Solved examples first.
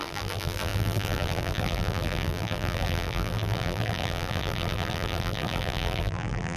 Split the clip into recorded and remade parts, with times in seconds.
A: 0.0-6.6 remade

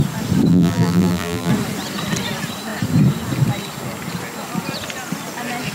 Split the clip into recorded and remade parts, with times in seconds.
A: 0.0-0.5 recorded; 0.5-1.5 remade; 1.5-5.7 recorded